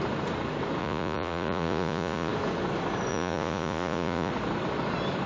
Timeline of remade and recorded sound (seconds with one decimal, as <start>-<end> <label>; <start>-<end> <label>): 0.0-0.8 recorded; 0.8-2.3 remade; 2.3-3.1 recorded; 3.1-4.3 remade; 4.3-5.3 recorded